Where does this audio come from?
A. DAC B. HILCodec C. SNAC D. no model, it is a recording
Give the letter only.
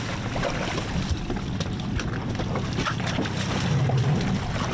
D